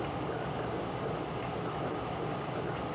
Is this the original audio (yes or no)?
yes